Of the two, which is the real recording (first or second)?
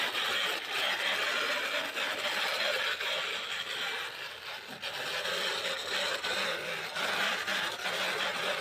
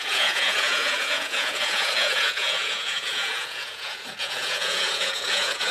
first